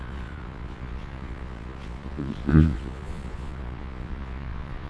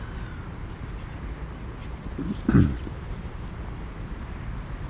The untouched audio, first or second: second